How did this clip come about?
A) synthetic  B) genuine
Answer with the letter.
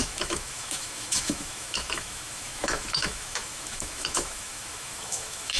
A